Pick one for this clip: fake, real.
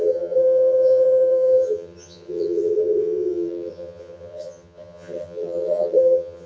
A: fake